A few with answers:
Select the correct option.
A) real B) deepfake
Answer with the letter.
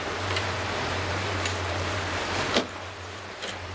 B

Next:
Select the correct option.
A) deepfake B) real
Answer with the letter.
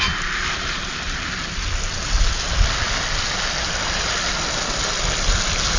B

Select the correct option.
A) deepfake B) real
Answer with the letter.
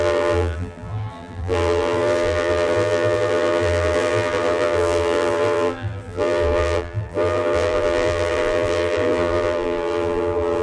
A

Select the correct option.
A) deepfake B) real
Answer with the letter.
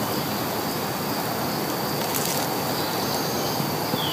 B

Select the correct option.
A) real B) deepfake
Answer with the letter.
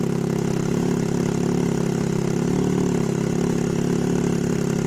A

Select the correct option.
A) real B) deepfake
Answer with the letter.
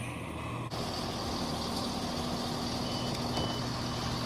A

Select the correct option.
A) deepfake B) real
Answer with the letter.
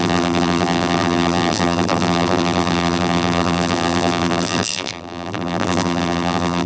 A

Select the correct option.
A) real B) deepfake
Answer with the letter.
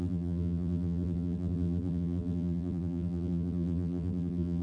B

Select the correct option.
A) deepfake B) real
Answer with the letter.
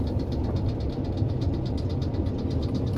B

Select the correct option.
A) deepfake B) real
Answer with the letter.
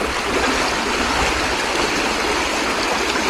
B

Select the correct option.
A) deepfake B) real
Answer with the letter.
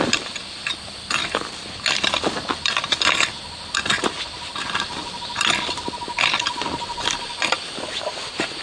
A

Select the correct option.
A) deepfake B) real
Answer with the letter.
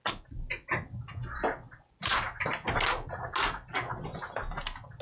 B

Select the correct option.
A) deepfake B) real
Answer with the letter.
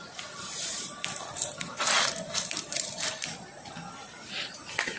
B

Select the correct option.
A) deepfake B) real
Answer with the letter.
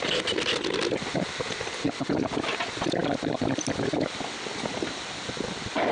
B